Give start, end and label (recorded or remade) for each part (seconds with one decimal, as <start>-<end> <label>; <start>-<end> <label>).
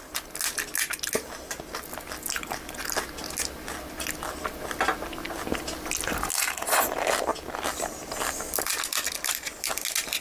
0.0-10.2 recorded